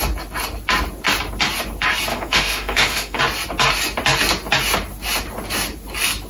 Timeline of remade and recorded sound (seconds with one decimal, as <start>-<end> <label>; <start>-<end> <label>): 0.0-2.1 recorded; 2.1-3.2 remade; 3.2-6.3 recorded

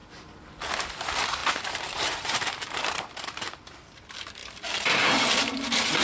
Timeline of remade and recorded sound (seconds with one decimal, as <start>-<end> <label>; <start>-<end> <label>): 0.0-0.8 recorded; 0.8-6.0 remade

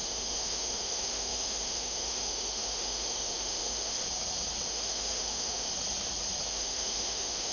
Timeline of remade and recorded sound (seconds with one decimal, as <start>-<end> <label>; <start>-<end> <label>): 0.0-4.0 remade; 4.0-4.7 recorded; 4.7-5.7 remade; 5.7-6.5 recorded; 6.5-7.5 remade

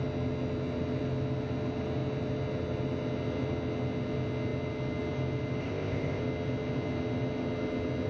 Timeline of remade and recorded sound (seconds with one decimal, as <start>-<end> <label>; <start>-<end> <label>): 0.0-5.6 recorded; 5.6-6.2 remade; 6.2-8.1 recorded

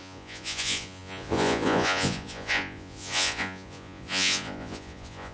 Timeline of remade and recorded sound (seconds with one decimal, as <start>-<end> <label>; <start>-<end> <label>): 0.0-5.3 remade